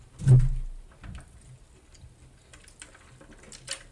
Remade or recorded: recorded